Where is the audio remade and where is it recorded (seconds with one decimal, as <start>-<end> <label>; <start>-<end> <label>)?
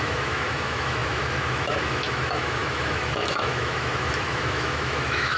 0.0-5.4 remade